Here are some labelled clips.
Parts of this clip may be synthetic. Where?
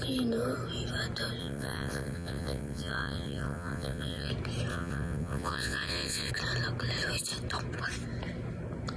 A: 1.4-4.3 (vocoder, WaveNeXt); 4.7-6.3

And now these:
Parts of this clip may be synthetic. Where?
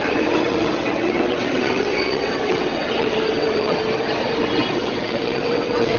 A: 0.0-3.8 (vocoder, WaveNeXt); 4.7-6.0